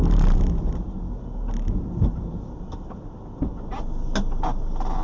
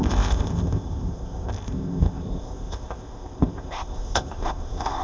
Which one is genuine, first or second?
first